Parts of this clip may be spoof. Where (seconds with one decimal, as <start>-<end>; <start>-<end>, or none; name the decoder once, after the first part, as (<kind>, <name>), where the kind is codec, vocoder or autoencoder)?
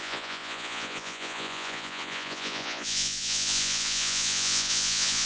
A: 0.0-5.3 (vocoder, Vocos)